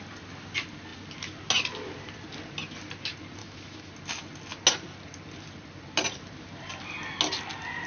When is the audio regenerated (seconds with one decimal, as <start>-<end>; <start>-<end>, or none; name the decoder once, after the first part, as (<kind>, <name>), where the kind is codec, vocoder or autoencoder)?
3.4-3.9 (autoencoder, DAC-VAE)